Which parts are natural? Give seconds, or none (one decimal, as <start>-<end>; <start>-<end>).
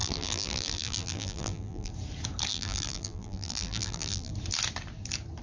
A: 1.9-2.5; 4.3-5.4